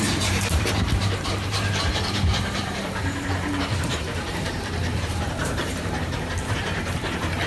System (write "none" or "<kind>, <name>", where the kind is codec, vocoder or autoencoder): vocoder, BigVGAN v2